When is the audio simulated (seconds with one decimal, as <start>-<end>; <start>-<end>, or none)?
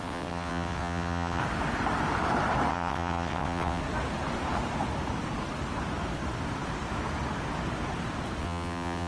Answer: 0.0-1.4; 2.7-3.8; 8.4-9.1